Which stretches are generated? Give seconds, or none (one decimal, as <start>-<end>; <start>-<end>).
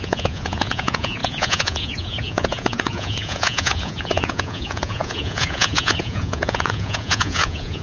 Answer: 0.0-7.8